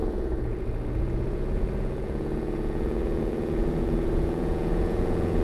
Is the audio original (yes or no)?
no